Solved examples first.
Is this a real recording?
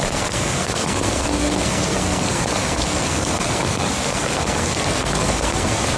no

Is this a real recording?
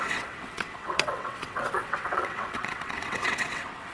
no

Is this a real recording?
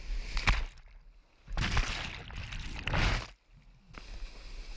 yes